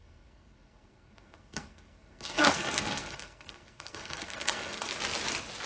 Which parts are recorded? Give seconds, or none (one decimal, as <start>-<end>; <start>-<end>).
4.9-5.7